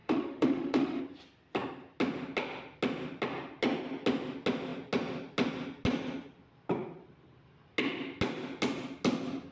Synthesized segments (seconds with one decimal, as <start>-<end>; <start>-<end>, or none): 0.0-1.0